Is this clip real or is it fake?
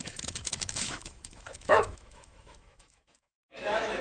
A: fake